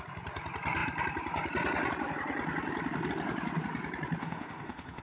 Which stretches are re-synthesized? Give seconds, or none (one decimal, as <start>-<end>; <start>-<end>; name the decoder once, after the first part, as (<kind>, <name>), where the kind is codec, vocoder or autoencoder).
4.2-5.0 (autoencoder, DAC-VAE)